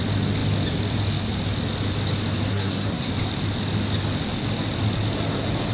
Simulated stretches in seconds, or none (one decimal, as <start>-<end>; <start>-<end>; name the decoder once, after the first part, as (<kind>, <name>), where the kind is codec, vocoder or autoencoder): 2.5-3.1 (codec, SNAC)